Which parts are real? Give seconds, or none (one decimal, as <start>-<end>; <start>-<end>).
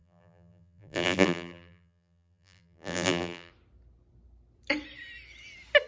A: 3.5-5.9